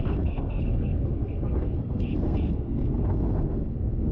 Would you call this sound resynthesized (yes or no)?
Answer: yes